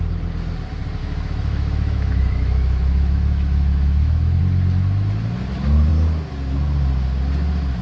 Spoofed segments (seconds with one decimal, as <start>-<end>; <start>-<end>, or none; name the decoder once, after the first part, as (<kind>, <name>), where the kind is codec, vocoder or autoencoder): 1.0-4.4 (autoencoder, DAC-VAE)